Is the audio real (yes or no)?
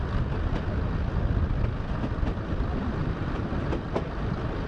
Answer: yes